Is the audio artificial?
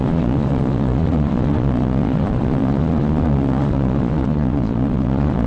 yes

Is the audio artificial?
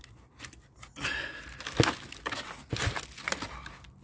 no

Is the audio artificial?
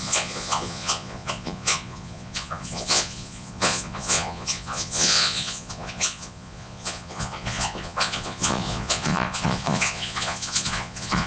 yes